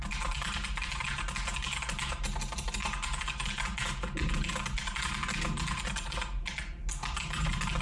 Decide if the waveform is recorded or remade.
recorded